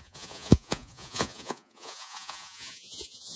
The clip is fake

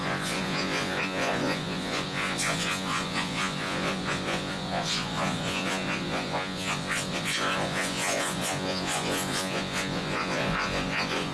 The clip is fake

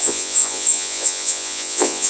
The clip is fake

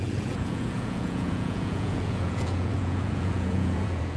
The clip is fake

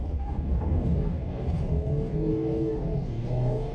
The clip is fake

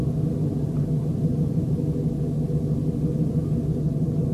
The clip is real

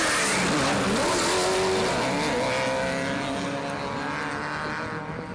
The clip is real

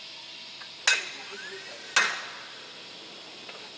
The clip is real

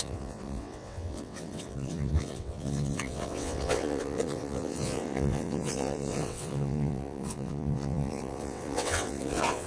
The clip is fake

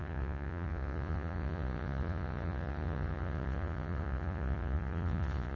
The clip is fake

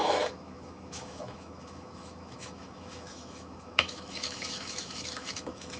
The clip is fake